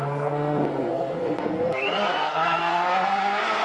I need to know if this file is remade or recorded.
remade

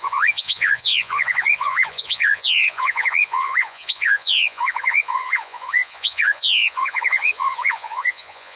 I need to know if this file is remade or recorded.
remade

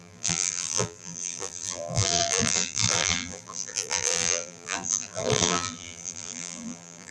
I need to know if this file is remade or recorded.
remade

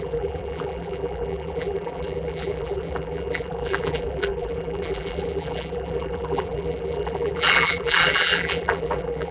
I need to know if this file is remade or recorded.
remade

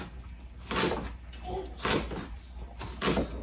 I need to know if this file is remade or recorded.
recorded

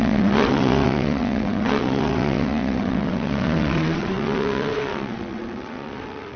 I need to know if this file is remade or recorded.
remade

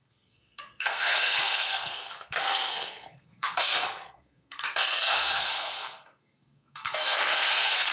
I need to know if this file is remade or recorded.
remade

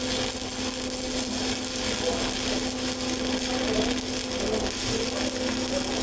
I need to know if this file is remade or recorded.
recorded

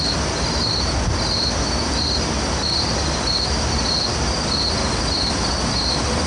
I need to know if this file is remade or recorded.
recorded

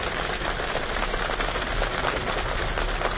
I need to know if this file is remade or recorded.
recorded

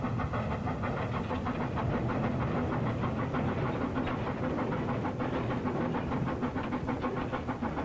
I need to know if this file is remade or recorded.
recorded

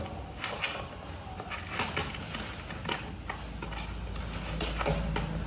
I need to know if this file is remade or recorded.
recorded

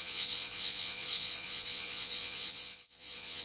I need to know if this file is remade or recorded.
remade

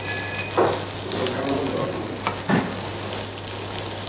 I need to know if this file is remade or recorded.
recorded